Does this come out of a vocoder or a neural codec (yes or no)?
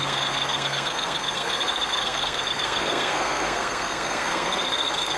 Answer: yes